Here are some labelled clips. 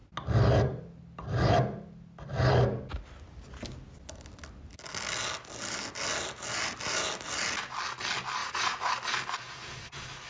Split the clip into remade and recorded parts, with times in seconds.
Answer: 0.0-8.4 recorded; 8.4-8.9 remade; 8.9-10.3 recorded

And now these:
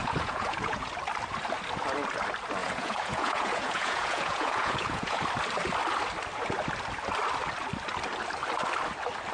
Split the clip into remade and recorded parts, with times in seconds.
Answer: 0.0-0.9 remade; 0.9-2.6 recorded; 2.6-5.2 remade; 5.2-9.3 recorded

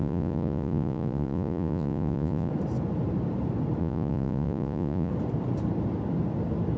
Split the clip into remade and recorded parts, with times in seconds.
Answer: 0.0-2.5 remade; 2.5-3.8 recorded; 3.8-5.1 remade; 5.1-6.8 recorded

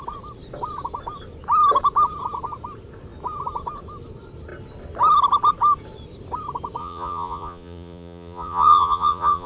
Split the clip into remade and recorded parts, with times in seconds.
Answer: 0.0-6.8 recorded; 6.8-9.5 remade